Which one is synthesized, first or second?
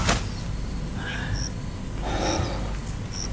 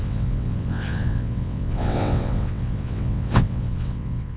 second